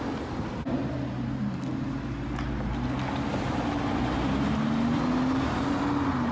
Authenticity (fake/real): real